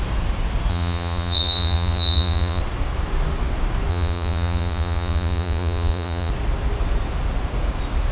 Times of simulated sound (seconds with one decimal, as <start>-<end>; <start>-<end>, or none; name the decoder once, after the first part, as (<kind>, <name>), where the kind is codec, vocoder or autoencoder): 0.7-2.6 (vocoder, Vocos); 3.9-6.3